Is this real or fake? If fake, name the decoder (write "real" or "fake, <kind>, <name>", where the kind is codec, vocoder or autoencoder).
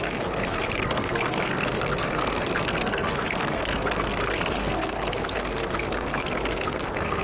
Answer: fake, codec, SNAC